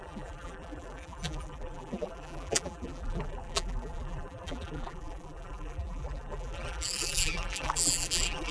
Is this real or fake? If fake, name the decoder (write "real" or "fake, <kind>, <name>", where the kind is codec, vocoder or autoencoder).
fake, vocoder, BigVGAN v2